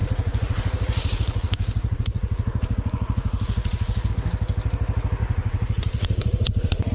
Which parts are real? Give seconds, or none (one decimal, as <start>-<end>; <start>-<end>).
4.1-5.2